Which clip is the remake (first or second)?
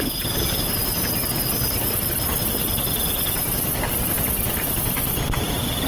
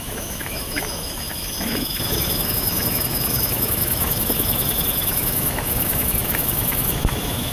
second